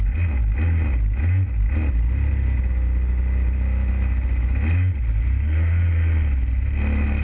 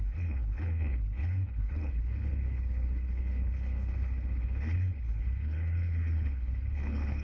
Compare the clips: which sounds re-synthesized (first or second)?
second